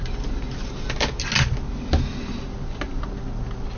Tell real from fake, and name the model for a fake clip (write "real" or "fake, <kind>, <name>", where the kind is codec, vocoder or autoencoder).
real